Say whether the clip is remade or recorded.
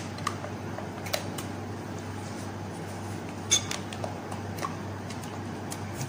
recorded